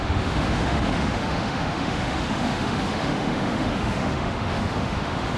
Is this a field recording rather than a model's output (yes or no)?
no